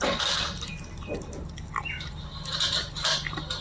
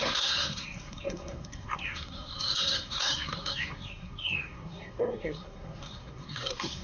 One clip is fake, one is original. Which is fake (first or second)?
second